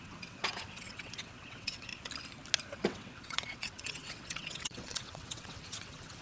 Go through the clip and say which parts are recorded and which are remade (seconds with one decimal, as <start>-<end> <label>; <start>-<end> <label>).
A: 0.0-1.9 remade; 1.9-2.7 recorded; 2.7-6.2 remade